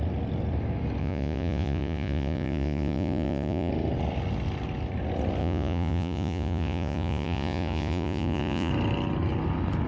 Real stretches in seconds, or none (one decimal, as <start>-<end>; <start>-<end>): 0.0-1.0; 3.7-5.4; 8.7-9.9